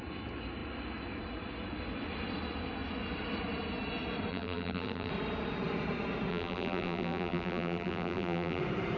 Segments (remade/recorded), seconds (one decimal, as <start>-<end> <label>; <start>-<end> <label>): 0.0-4.3 recorded; 4.3-5.1 remade; 5.1-6.3 recorded; 6.3-8.6 remade; 8.6-9.0 recorded